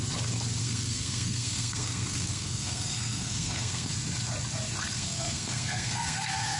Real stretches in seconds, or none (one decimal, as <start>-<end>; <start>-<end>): 0.0-0.6; 3.9-4.9